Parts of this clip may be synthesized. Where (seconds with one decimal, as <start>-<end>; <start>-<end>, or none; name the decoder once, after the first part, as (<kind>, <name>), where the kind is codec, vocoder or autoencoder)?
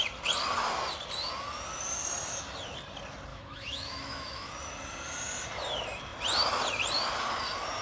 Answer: 3.3-4.5 (autoencoder, DAC-VAE)